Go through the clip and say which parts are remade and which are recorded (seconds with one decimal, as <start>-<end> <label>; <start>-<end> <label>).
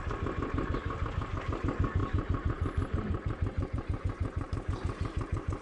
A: 0.0-2.0 recorded; 2.0-5.6 remade